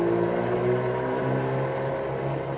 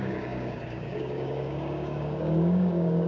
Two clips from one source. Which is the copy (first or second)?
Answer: second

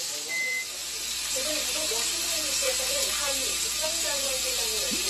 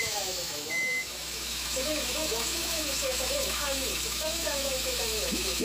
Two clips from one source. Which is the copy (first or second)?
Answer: second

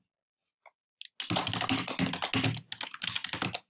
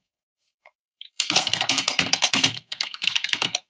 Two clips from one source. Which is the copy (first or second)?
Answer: second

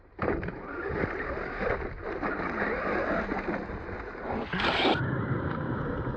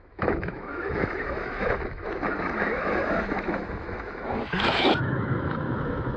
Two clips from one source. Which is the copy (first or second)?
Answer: second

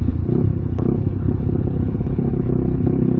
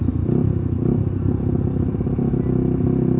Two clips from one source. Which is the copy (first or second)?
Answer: first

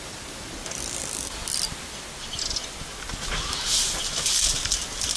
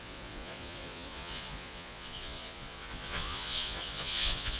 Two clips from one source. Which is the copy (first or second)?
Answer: second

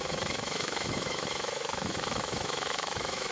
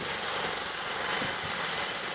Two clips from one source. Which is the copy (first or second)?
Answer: first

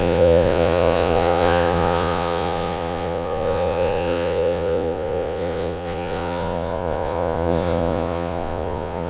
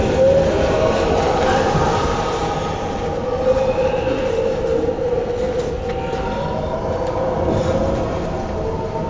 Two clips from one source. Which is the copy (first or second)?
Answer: first